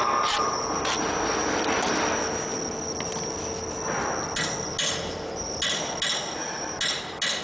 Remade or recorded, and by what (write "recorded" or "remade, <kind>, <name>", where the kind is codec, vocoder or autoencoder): recorded